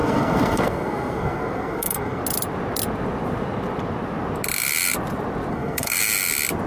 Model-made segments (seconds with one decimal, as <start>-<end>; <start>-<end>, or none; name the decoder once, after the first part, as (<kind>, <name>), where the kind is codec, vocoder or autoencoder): 0.0-2.2 (codec, SNAC); 5.5-6.0